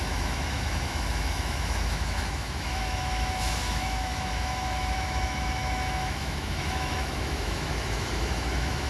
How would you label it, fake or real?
fake